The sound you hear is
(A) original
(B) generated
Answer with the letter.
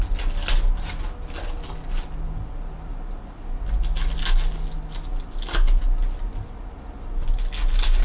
A